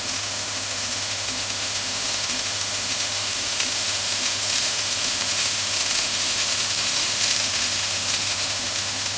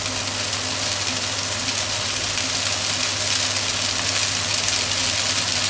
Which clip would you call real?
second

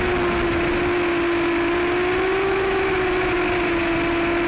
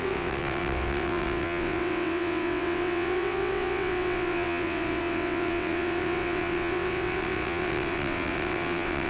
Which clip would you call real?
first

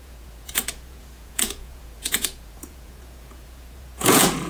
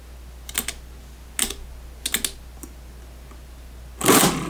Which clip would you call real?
second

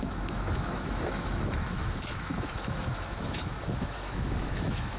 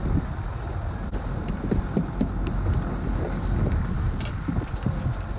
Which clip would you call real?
second